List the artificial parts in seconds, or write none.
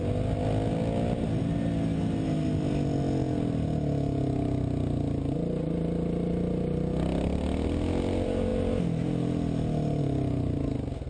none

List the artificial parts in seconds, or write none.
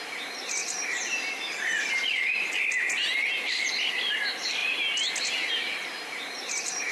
none